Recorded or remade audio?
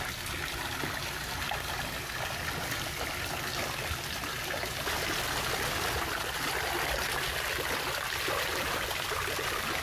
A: recorded